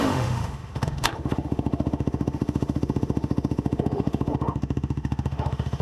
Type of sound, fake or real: fake